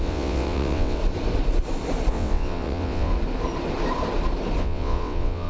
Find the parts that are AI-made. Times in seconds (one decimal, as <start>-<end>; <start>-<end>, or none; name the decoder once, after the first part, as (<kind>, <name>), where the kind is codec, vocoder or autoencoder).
0.0-1.0 (vocoder, WaveNeXt); 2.1-3.1; 4.6-5.5